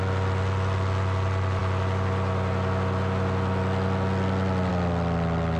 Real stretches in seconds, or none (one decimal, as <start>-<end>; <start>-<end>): 0.0-5.6